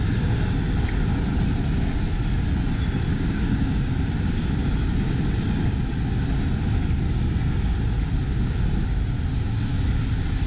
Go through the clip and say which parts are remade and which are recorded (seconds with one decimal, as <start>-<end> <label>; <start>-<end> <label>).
0.0-3.1 recorded; 3.1-3.8 remade; 3.8-10.5 recorded

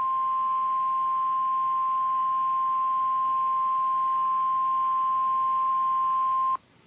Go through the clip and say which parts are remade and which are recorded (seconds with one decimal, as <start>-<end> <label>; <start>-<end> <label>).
0.0-6.9 recorded

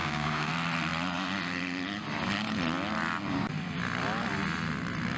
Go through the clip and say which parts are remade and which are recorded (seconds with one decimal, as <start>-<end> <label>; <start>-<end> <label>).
0.0-0.5 remade; 0.5-5.2 recorded

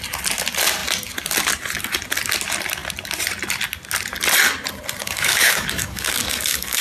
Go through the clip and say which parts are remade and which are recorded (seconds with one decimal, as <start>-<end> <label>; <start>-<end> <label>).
0.0-5.0 recorded; 5.0-6.8 remade

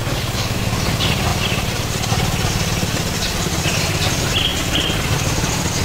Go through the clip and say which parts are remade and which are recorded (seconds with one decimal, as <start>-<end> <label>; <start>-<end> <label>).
0.0-0.8 remade; 0.8-5.8 recorded

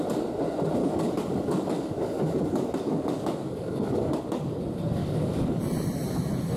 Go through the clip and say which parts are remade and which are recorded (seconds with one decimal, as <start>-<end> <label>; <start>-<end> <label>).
0.0-0.8 recorded; 0.8-4.6 remade; 4.6-5.0 recorded; 5.0-5.6 remade; 5.6-6.6 recorded

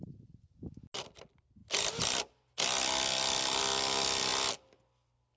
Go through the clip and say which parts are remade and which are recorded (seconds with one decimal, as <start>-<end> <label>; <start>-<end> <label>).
0.0-5.4 recorded

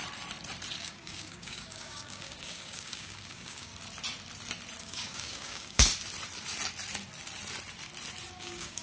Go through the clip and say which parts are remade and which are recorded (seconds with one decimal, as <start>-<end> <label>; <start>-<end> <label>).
0.0-0.8 recorded; 0.8-3.7 remade; 3.7-4.8 recorded; 4.8-5.9 remade; 5.9-8.4 recorded; 8.4-8.8 remade